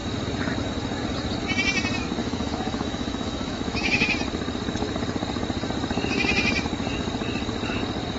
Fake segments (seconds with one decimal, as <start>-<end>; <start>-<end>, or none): 2.2-4.1

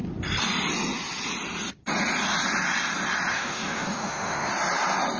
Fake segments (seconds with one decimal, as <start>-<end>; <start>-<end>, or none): 3.3-4.5

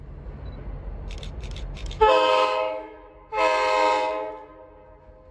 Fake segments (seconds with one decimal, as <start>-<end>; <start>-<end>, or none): 1.8-3.1

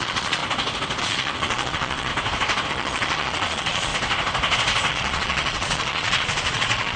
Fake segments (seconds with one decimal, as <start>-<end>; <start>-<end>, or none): 0.0-0.4; 1.0-2.1; 2.7-3.9; 4.9-7.0

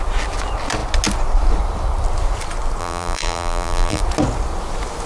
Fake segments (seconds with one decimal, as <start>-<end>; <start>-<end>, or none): 2.8-4.0

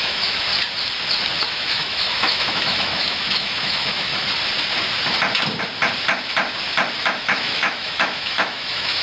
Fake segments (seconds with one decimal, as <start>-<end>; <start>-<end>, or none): 0.0-0.5; 1.5-4.1; 7.0-9.0